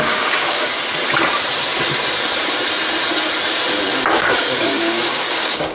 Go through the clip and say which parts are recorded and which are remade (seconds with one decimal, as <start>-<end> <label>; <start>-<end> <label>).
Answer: 0.0-0.7 remade; 0.7-4.1 recorded; 4.1-5.7 remade